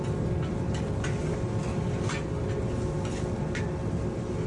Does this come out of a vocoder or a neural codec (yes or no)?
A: no